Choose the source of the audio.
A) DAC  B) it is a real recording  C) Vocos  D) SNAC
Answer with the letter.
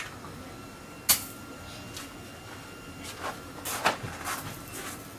B